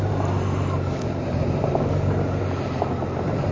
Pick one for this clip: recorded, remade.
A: recorded